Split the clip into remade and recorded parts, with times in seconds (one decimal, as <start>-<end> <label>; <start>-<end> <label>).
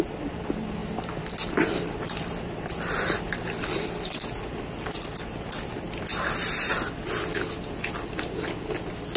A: 0.0-9.2 recorded